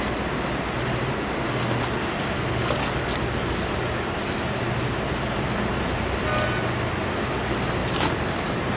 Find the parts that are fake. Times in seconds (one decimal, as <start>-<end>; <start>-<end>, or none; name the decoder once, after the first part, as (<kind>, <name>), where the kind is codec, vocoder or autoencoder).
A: 7.8-8.8 (vocoder, BigVGAN v2)